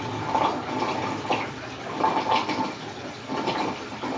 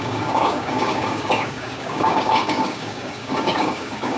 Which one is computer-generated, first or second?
second